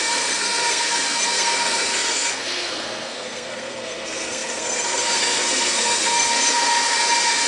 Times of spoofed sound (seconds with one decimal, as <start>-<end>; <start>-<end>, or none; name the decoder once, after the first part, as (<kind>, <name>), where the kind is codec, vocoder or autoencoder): 0.0-7.5 (codec, SNAC)